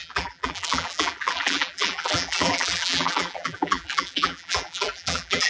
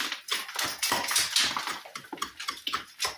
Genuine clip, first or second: second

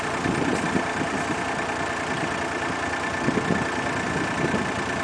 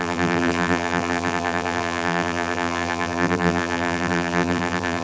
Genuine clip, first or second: first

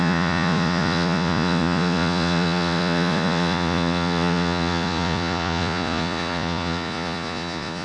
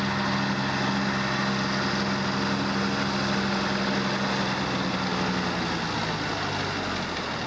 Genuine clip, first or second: second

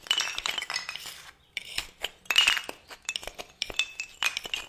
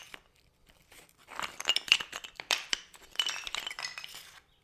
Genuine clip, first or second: first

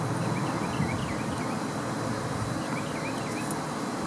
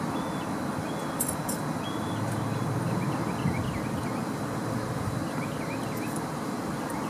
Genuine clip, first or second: first